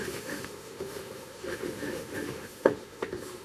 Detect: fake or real fake